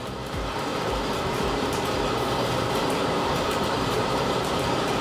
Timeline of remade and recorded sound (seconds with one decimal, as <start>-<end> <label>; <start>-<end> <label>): 0.0-5.0 remade